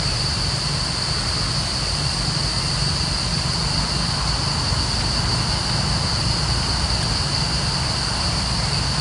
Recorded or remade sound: recorded